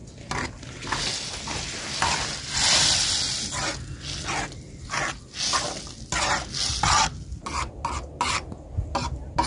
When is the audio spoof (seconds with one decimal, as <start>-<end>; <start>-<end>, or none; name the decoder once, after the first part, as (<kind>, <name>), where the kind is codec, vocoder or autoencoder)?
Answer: none